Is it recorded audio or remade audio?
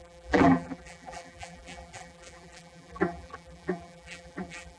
remade